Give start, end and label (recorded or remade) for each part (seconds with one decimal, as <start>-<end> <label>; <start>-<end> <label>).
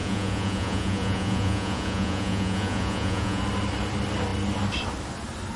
0.0-3.4 remade; 3.4-5.6 recorded